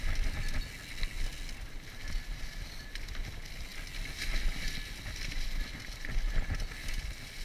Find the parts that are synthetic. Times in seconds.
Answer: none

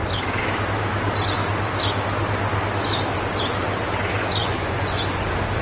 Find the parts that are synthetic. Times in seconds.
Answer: 4.4-5.0 (vocoder, Vocos)